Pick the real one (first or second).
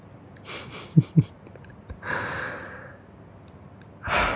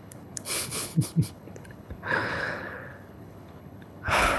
first